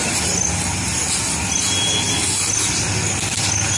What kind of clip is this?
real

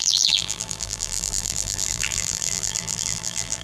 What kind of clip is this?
fake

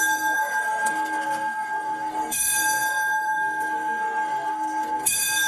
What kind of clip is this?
fake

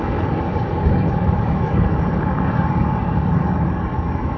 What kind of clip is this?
fake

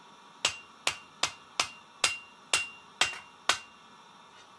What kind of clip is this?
real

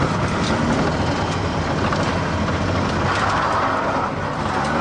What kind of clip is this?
real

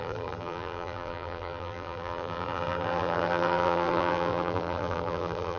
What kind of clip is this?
fake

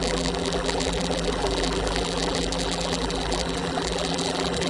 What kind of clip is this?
fake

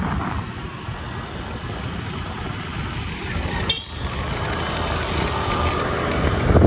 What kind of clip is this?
real